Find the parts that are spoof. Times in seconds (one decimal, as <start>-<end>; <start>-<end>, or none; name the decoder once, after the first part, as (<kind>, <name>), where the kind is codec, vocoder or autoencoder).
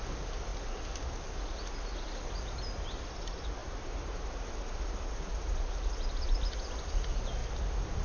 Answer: none